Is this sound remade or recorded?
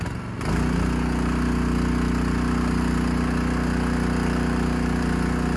recorded